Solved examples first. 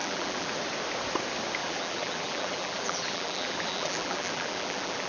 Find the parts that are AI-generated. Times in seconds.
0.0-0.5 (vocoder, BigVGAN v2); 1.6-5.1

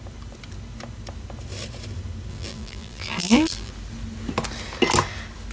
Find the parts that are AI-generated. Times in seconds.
2.3-3.7 (vocoder, BigVGAN v2)